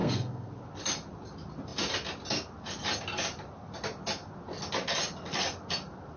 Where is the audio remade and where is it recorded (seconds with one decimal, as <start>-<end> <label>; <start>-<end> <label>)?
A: 0.0-0.5 remade; 0.5-6.2 recorded